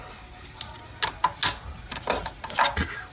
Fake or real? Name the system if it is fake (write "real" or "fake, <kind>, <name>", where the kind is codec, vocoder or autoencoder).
real